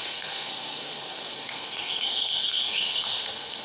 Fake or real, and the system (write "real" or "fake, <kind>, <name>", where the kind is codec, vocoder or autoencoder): fake, codec, SNAC